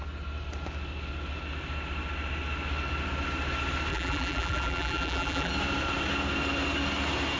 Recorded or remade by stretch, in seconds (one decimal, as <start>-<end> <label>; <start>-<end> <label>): 0.0-3.9 recorded; 3.9-5.5 remade; 5.5-7.4 recorded